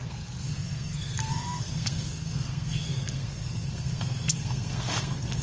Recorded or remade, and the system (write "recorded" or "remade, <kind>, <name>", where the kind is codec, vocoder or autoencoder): remade, codec, SNAC